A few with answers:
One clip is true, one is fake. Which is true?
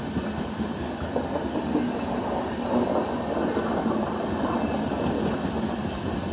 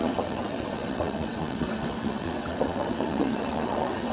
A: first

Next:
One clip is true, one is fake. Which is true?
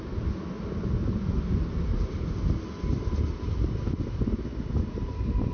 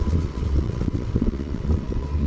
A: first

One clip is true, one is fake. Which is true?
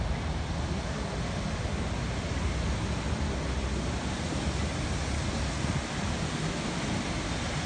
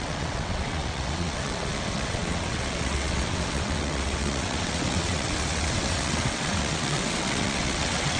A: first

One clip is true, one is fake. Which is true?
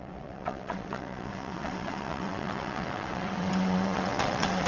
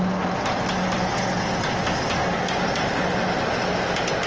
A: second